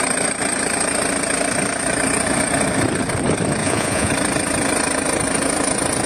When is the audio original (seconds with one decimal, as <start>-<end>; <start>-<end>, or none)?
0.0-3.6; 4.1-6.1